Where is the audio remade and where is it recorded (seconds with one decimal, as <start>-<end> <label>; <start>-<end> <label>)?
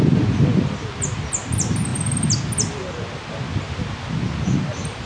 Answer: 0.0-5.1 recorded